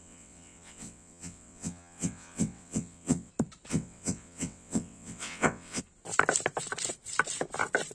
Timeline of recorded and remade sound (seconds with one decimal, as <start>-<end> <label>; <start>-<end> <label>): 0.0-3.3 remade; 3.3-3.7 recorded; 3.7-5.8 remade; 5.8-7.9 recorded